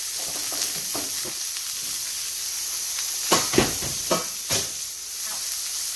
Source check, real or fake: real